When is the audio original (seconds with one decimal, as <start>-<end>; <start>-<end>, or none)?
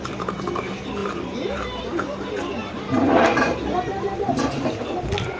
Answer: 0.0-1.0; 1.8-2.6; 3.6-5.4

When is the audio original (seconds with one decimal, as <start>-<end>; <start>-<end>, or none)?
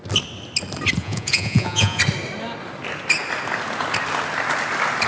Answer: 0.0-1.0; 2.0-5.1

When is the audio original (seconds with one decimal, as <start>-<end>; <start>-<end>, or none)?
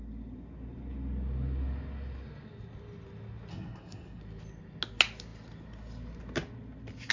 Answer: 0.0-3.5; 4.2-7.1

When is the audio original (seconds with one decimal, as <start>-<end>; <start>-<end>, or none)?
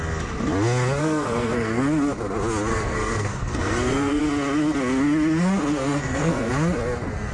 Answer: 0.0-1.0; 1.8-2.7; 4.2-5.7; 6.5-7.3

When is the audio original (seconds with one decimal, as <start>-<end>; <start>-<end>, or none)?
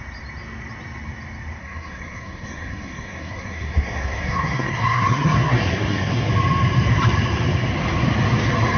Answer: 0.0-1.6; 6.3-8.8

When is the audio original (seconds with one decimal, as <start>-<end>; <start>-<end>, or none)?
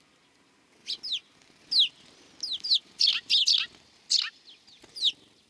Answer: 0.0-5.5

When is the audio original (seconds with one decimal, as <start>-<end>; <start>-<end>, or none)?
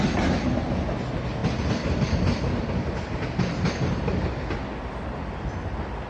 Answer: 0.0-6.1